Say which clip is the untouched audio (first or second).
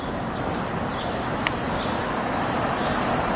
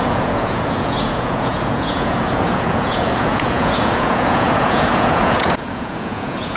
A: first